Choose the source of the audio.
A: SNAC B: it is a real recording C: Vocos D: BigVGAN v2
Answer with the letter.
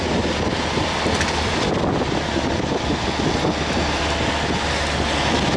B